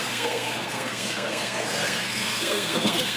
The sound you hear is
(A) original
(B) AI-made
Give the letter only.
B